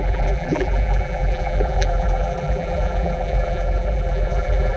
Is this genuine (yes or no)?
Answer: no